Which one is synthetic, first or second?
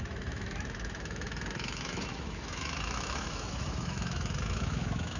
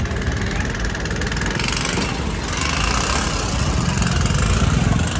first